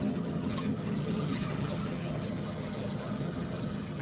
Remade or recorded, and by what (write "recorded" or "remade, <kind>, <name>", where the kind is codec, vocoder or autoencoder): remade, vocoder, HiFi-GAN